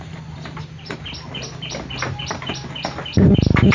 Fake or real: real